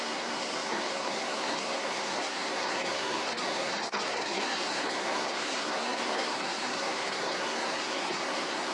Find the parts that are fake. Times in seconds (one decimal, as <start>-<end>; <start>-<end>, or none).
0.0-8.7

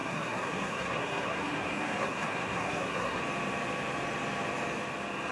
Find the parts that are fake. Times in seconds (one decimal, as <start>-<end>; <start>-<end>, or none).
0.0-3.2

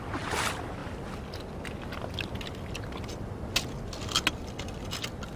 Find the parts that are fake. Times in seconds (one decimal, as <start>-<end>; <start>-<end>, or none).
none